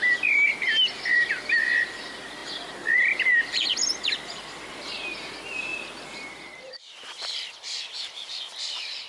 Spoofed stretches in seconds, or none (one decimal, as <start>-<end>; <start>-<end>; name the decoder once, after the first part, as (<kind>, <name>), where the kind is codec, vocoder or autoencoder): 0.0-9.1 (vocoder, BigVGAN v2)